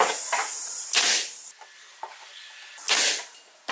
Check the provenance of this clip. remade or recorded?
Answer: recorded